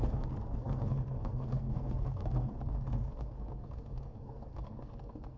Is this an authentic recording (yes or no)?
no